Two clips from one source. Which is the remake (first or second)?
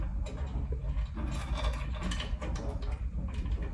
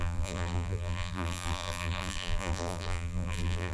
second